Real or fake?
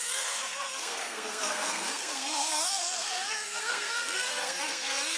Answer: fake